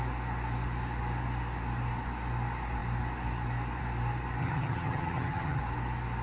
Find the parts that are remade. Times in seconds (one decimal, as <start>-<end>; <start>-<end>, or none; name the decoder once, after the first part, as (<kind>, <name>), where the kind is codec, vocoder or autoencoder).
4.4-5.6 (vocoder, HiFi-GAN)